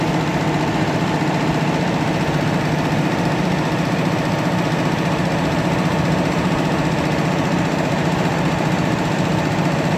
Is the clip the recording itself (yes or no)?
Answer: yes